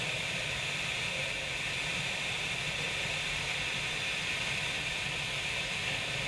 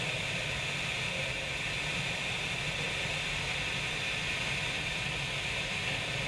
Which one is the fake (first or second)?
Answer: first